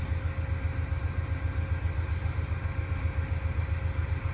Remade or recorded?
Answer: recorded